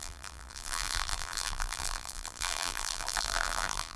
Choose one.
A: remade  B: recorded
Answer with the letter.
A